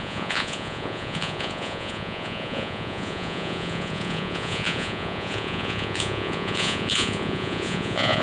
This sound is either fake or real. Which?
fake